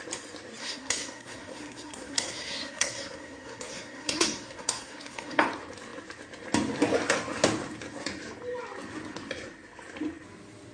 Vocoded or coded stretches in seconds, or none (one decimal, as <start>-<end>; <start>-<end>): 0.6-5.4

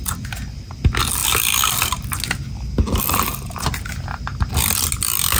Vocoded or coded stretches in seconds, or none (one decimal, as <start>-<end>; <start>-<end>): none

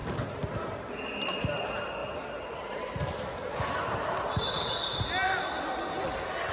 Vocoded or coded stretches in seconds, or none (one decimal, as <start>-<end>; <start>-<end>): none